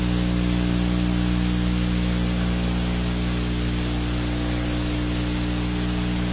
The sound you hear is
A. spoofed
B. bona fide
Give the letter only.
B